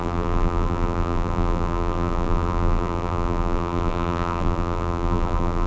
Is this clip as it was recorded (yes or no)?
no